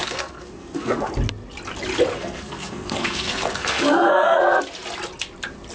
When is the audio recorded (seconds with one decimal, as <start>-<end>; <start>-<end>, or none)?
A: 1.1-2.1; 4.6-5.7